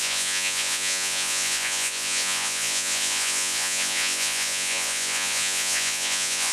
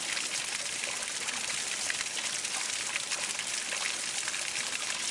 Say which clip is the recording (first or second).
second